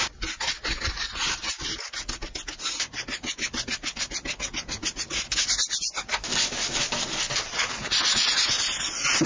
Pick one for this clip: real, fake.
real